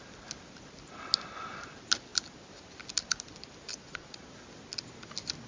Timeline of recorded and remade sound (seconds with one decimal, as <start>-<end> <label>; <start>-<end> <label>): 0.0-3.7 recorded; 3.7-4.3 remade; 4.3-5.5 recorded